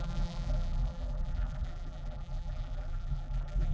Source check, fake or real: fake